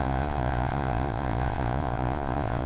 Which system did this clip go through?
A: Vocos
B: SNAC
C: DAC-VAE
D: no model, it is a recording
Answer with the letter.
A